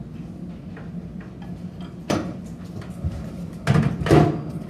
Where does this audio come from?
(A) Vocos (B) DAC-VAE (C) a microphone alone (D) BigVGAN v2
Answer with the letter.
C